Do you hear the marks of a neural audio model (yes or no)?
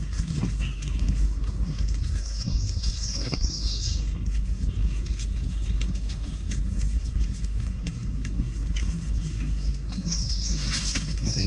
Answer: yes